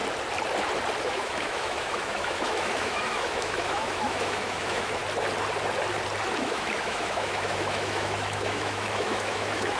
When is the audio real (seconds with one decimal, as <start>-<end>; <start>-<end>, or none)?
0.0-1.0; 5.0-6.4